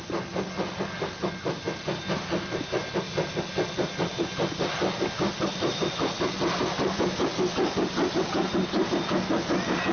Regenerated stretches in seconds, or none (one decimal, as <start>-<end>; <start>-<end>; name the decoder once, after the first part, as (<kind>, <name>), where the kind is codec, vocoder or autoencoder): none